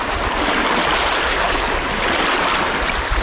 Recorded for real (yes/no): yes